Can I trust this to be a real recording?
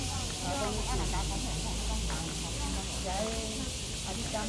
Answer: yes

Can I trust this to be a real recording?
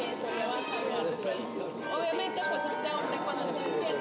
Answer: no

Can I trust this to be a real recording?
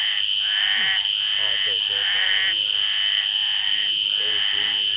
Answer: yes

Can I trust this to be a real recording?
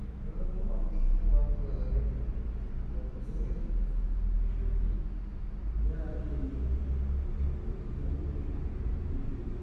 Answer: yes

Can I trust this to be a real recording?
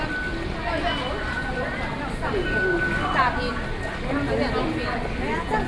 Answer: yes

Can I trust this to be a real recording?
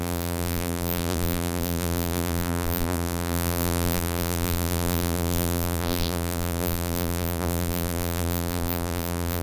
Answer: no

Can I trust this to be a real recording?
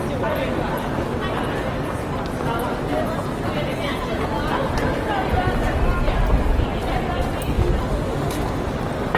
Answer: yes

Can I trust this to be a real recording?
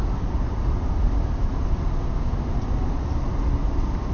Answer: yes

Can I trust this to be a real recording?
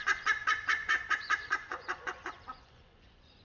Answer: no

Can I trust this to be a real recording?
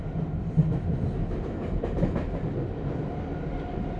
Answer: yes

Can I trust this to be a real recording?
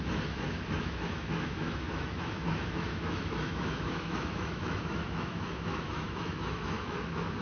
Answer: no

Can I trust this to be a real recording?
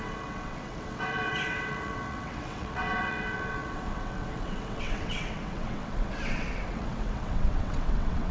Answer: no